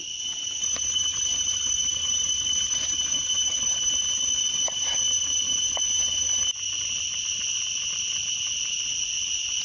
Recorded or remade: recorded